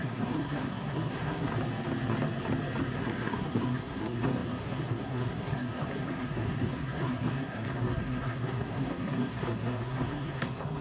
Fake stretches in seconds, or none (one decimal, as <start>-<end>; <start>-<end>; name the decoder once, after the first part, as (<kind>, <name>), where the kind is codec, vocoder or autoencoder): 0.0-1.5 (codec, SNAC); 2.8-10.8